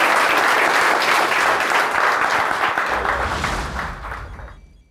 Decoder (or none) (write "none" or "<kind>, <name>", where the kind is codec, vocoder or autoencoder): none